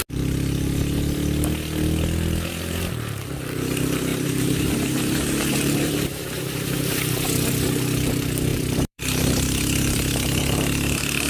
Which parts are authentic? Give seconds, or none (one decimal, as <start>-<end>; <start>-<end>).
0.0-4.1; 6.8-8.5